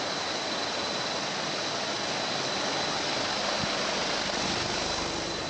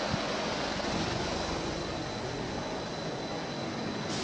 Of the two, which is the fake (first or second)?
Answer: second